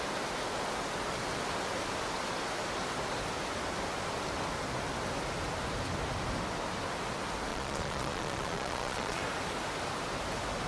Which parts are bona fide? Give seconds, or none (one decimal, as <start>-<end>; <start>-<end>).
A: 0.0-7.5; 9.2-10.7